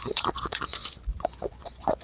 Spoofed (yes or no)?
yes